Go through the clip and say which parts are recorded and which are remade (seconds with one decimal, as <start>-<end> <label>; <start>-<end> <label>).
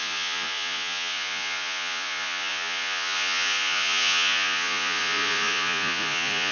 0.0-6.5 remade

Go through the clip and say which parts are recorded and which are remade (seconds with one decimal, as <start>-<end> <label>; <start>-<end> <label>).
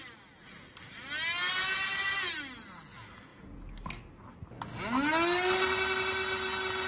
0.0-6.9 recorded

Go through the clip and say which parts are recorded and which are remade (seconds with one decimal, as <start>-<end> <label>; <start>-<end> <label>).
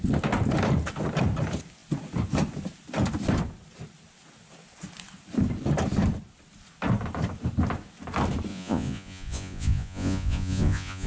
0.0-8.5 recorded; 8.5-11.1 remade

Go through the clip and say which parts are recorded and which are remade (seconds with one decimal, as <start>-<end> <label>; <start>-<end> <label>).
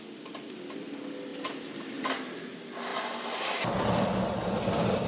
0.0-5.1 recorded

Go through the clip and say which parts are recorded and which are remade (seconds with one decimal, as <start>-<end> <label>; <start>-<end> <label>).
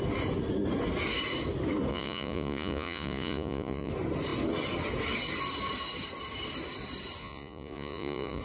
0.0-1.9 recorded; 1.9-3.9 remade; 3.9-7.2 recorded; 7.2-8.4 remade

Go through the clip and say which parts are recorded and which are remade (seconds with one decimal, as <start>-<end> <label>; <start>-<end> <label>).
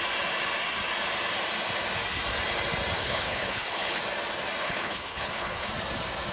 0.0-3.0 recorded; 3.0-4.0 remade; 4.0-4.6 recorded; 4.6-5.7 remade; 5.7-6.3 recorded